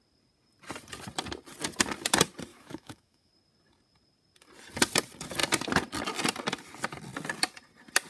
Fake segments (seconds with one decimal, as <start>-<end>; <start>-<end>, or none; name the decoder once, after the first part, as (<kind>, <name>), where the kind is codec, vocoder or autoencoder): 2.5-3.3 (autoencoder, DAC-VAE)